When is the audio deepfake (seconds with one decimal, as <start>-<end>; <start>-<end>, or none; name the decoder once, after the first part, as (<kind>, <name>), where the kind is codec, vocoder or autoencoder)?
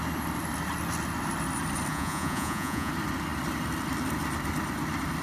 1.9-2.9 (vocoder, Vocos)